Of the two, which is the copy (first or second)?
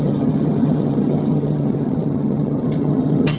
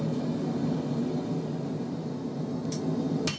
first